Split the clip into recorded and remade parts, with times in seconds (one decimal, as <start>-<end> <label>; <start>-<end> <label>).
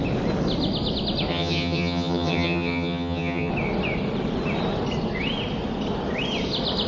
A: 0.0-1.3 recorded; 1.3-3.5 remade; 3.5-6.9 recorded